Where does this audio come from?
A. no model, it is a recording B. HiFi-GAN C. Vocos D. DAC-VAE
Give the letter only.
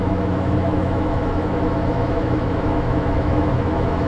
D